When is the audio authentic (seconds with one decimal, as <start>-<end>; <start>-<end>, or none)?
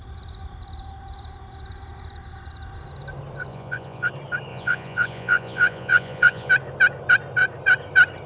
0.0-3.5; 4.1-4.5; 6.5-8.3